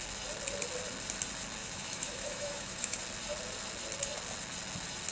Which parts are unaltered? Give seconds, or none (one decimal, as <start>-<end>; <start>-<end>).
0.0-1.6; 3.0-5.1